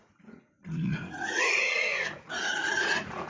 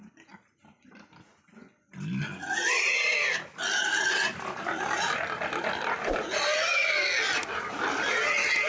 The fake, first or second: first